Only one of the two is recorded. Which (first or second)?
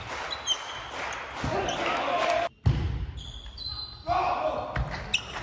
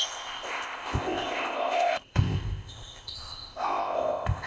first